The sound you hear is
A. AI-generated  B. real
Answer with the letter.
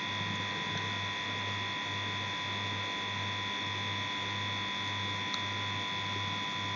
B